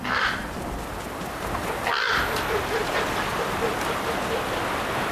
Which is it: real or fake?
real